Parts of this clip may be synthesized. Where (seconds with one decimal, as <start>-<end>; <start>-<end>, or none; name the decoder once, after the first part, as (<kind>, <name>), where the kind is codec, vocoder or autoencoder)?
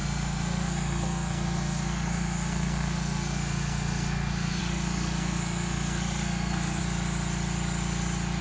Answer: 0.0-6.8 (codec, SNAC)